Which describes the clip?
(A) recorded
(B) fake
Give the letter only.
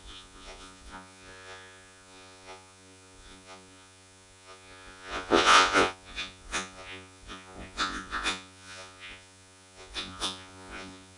B